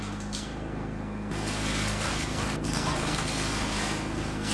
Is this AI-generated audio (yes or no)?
yes